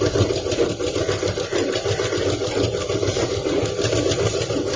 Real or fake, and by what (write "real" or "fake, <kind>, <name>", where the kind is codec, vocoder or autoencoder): real